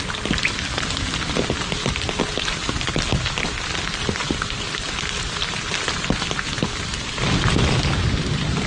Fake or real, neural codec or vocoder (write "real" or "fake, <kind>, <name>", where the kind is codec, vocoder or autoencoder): real